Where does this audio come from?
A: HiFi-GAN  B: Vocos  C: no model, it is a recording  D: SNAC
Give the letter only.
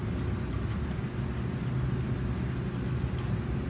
C